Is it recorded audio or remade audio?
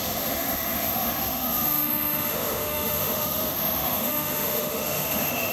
remade